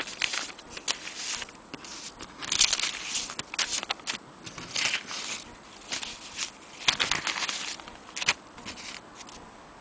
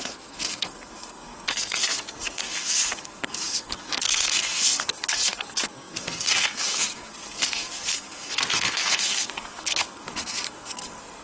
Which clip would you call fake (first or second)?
second